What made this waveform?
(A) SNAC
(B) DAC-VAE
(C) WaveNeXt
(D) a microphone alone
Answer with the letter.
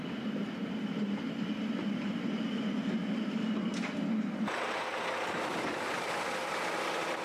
D